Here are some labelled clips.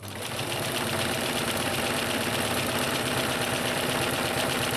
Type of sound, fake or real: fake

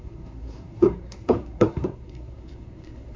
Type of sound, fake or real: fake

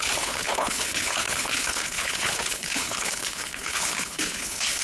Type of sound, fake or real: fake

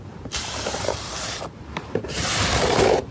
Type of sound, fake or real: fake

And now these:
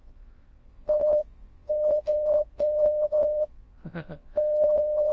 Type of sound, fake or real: fake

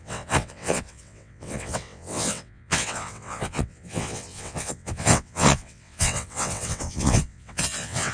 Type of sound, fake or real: fake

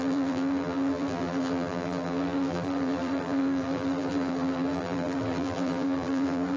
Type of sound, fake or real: fake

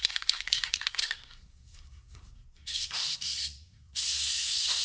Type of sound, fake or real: fake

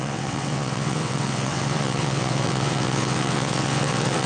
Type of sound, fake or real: fake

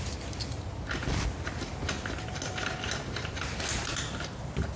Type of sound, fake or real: real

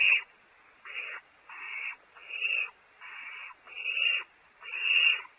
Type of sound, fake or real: real